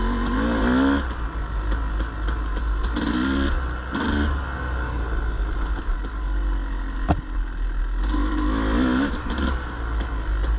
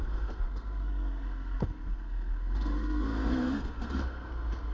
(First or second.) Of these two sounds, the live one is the first